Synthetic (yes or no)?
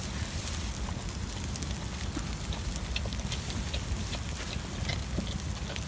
no